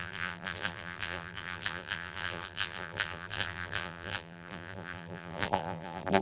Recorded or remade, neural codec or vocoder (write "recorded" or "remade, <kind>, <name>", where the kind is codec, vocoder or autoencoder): remade, vocoder, BigVGAN v2